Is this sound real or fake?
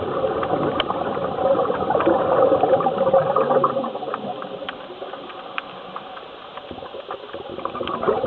real